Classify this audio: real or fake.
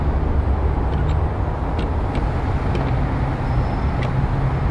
real